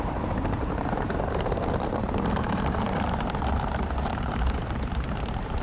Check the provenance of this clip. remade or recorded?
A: remade